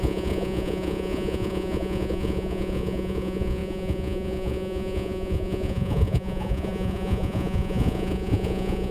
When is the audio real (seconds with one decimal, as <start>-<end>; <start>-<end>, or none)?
none